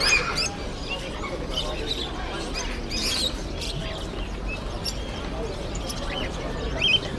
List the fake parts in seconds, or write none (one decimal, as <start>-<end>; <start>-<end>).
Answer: none